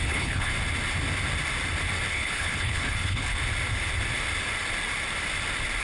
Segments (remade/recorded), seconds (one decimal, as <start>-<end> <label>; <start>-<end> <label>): 0.0-0.5 remade; 0.5-2.1 recorded; 2.1-3.3 remade; 3.3-5.8 recorded